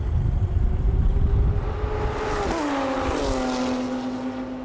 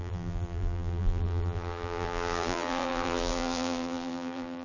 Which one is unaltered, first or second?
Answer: first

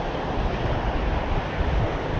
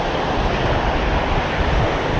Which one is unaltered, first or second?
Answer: second